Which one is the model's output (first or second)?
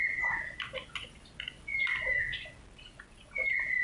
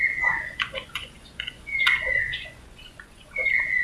second